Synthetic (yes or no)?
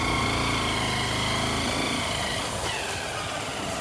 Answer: no